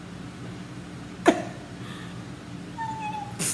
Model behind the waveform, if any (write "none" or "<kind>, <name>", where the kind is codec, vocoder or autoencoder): none